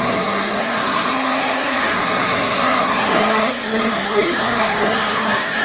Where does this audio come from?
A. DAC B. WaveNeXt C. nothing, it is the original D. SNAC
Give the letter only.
D